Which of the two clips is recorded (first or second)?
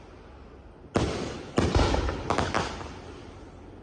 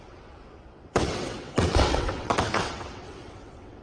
first